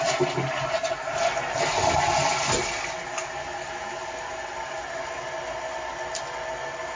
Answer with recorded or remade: recorded